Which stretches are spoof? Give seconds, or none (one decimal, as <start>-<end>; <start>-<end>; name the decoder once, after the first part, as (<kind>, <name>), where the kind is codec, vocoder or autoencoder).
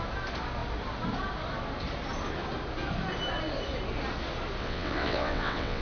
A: 4.6-5.8 (vocoder, WaveNeXt)